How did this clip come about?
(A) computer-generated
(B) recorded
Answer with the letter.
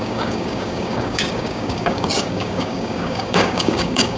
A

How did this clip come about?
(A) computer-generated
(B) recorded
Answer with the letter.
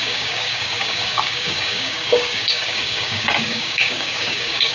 A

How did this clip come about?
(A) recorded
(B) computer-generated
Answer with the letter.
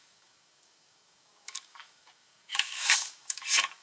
B